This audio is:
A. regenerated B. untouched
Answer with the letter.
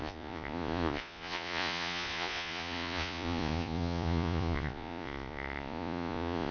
A